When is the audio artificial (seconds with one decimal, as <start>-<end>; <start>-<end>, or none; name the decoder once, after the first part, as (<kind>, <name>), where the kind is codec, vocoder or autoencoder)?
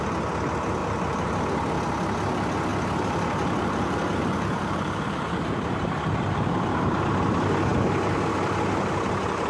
0.8-1.4 (vocoder, BigVGAN v2); 2.7-5.9